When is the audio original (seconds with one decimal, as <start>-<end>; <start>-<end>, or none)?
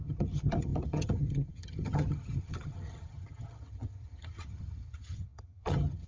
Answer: none